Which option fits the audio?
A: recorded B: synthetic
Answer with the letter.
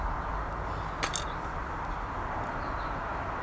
A